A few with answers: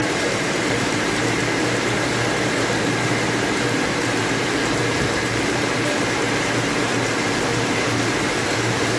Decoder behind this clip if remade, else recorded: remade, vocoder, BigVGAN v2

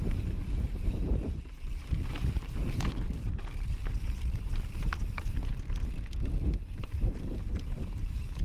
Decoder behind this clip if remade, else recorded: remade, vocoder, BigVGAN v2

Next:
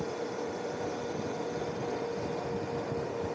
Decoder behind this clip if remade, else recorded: recorded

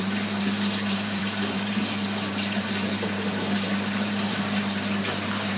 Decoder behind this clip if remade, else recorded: remade, vocoder, BigVGAN v2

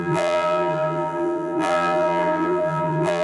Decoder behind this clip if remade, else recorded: remade, vocoder, BigVGAN v2